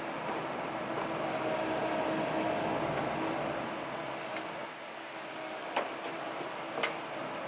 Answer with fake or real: real